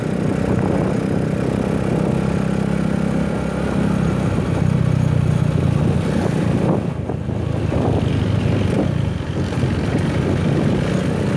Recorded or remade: recorded